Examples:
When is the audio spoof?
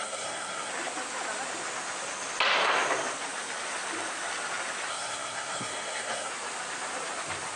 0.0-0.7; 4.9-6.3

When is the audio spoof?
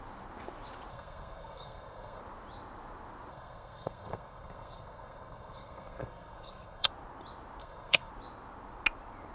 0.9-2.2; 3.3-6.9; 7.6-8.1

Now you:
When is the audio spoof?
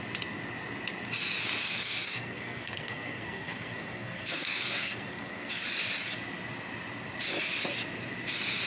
1.6-5.5